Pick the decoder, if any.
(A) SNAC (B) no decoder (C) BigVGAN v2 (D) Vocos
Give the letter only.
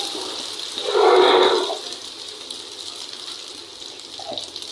C